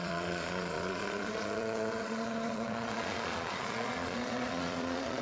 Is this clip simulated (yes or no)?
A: yes